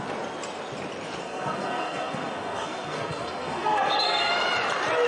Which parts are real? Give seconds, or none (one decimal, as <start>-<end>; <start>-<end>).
0.0-1.2; 4.3-5.1